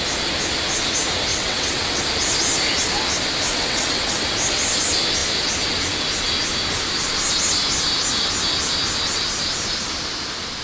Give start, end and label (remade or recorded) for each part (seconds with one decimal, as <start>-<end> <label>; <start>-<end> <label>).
0.0-1.3 recorded; 1.3-2.0 remade; 2.0-3.5 recorded; 3.5-4.2 remade; 4.2-10.6 recorded